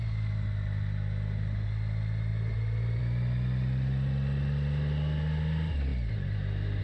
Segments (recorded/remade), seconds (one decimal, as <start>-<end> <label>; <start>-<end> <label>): 0.0-6.8 recorded